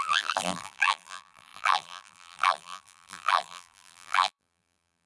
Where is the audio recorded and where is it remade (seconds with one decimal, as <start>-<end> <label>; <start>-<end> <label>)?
0.0-5.1 remade